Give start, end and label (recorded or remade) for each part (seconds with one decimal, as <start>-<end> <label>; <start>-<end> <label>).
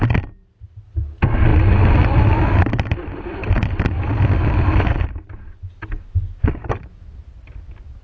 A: 0.0-8.0 recorded